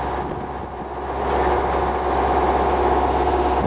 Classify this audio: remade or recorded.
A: recorded